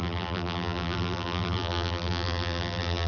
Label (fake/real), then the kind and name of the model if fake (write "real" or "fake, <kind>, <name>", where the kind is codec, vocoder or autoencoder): fake, vocoder, BigVGAN v2